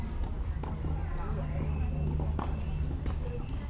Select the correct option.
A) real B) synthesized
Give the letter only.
A